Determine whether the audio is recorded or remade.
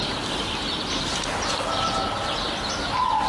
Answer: recorded